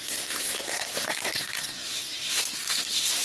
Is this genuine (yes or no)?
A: no